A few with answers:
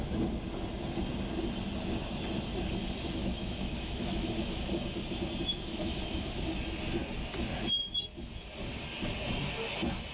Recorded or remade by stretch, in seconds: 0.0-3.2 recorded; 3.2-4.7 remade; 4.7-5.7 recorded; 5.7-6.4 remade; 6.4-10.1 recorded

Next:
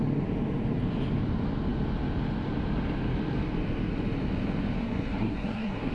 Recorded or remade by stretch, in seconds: 0.0-4.8 recorded; 4.8-5.9 remade